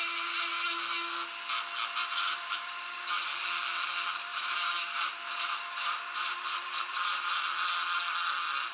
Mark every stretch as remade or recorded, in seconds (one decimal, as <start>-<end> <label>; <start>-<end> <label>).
0.0-2.0 recorded; 2.0-3.4 remade; 3.4-4.3 recorded; 4.3-7.3 remade; 7.3-8.7 recorded